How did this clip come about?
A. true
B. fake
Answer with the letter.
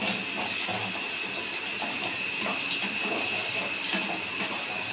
A